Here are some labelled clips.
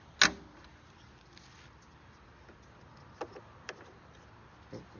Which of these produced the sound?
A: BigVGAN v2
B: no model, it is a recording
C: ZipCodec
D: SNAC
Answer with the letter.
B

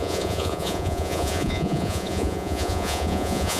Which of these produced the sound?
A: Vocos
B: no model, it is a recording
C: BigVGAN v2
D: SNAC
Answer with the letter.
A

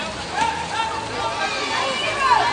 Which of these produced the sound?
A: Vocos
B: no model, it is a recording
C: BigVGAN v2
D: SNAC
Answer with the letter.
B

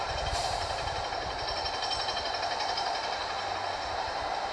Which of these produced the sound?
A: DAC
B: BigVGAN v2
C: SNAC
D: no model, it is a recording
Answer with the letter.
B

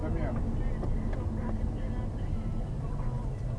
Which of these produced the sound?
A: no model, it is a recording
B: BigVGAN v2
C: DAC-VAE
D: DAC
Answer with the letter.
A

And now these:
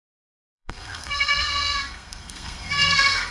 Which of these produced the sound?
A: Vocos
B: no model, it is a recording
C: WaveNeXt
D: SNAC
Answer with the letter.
D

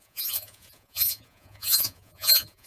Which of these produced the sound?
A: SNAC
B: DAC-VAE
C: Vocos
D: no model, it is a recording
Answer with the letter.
C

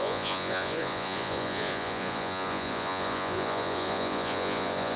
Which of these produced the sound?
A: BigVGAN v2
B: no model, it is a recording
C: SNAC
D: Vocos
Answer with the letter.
D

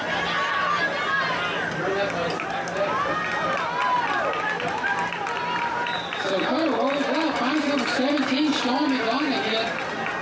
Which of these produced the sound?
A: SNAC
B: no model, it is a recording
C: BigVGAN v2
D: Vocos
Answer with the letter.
B